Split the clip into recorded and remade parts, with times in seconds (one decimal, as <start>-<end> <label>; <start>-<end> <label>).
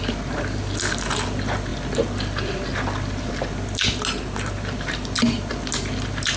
0.0-6.4 recorded